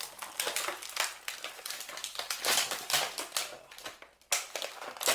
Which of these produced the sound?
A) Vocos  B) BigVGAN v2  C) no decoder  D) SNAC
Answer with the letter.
C